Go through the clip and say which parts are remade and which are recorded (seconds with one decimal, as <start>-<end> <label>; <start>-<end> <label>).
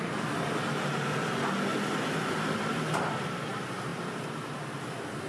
0.0-1.7 recorded; 1.7-2.7 remade; 2.7-3.9 recorded; 3.9-4.4 remade; 4.4-5.3 recorded